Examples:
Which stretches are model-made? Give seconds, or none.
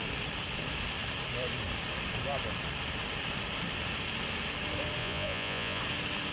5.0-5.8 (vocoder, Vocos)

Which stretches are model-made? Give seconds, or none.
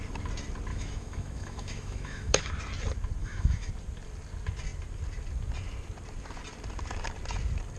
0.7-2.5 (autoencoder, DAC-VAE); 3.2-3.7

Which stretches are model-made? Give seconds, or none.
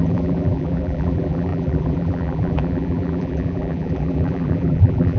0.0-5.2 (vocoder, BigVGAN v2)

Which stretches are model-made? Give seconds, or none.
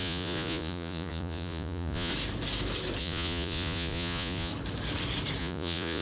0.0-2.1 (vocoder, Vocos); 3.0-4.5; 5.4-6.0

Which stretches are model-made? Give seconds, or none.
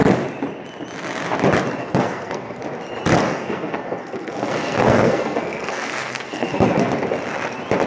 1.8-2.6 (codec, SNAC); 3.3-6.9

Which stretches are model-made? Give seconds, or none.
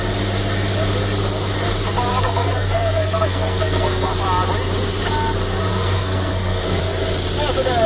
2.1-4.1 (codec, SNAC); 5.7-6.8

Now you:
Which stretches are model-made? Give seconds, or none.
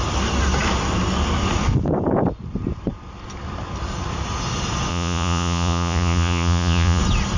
4.9-7.0 (vocoder, Vocos)